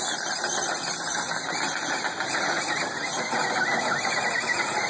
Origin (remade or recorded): recorded